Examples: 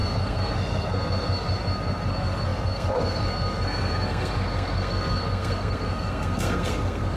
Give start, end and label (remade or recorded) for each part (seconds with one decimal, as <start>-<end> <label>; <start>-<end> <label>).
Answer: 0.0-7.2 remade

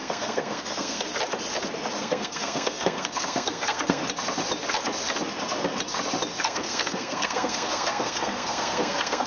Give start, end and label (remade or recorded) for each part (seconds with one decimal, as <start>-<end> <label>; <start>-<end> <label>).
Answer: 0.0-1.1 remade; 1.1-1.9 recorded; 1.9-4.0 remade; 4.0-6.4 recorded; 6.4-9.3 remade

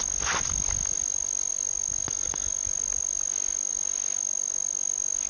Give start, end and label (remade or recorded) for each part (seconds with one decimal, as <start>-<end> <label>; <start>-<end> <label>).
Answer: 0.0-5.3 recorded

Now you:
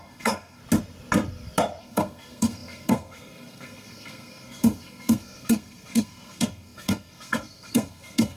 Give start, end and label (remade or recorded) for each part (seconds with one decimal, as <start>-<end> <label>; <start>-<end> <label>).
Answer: 0.0-0.6 remade; 0.6-1.8 recorded; 1.8-8.4 remade